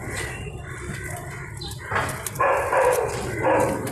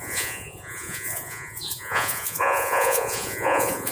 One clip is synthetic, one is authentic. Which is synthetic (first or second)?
second